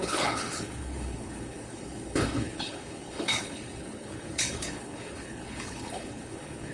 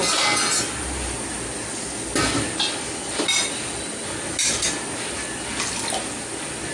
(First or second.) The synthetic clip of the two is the first